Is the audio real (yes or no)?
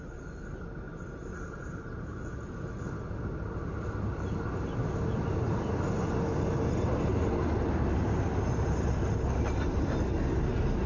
yes